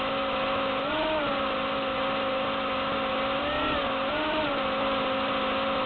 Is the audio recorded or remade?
recorded